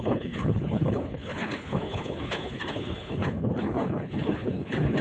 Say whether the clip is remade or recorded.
remade